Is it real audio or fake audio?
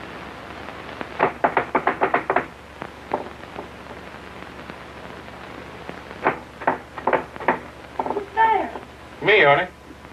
real